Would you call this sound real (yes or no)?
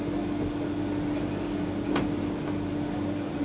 yes